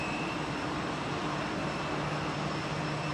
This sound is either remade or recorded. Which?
recorded